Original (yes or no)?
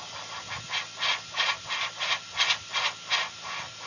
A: yes